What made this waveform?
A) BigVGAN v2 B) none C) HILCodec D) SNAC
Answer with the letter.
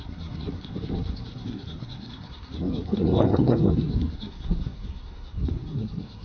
D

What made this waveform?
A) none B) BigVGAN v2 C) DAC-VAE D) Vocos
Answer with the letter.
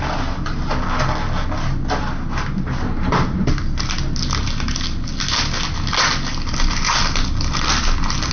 A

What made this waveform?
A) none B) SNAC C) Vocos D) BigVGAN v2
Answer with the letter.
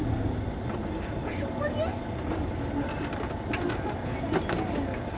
A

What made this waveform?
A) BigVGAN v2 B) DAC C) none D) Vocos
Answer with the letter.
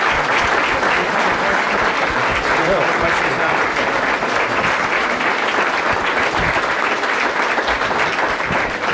C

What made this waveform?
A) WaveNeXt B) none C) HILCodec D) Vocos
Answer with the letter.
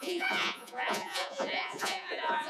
D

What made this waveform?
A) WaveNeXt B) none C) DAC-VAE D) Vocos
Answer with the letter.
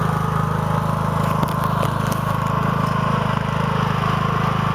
B